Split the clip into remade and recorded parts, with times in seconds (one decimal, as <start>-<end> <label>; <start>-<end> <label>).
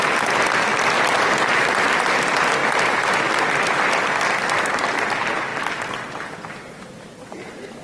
0.0-7.8 recorded